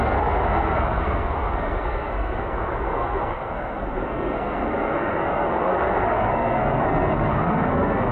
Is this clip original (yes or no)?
no